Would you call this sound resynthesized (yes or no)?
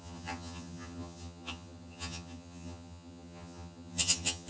yes